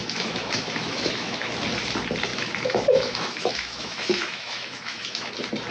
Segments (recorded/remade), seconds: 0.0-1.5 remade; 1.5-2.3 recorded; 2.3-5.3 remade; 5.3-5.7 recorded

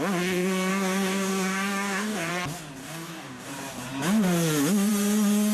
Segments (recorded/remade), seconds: 0.0-0.7 recorded; 0.7-2.3 remade; 2.3-2.8 recorded; 2.8-3.5 remade; 3.5-5.5 recorded

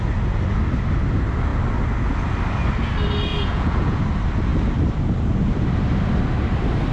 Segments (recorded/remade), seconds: 0.0-3.3 recorded; 3.3-4.0 remade; 4.0-6.9 recorded

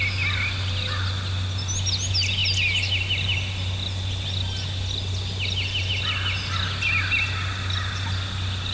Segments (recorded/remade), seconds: 0.0-8.7 recorded

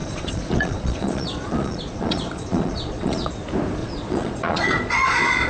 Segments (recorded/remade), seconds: 0.0-3.3 remade; 3.3-3.8 recorded; 3.8-5.5 remade